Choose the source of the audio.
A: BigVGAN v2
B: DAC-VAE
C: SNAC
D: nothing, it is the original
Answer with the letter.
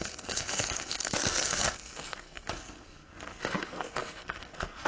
C